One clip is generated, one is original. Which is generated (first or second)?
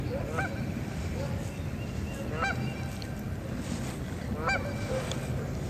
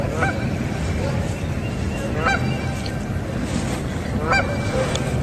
second